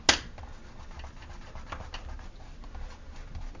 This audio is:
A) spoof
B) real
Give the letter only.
B